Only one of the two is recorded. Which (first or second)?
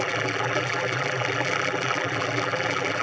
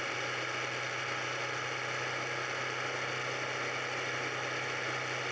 second